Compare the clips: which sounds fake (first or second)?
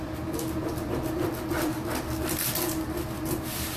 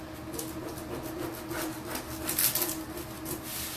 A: first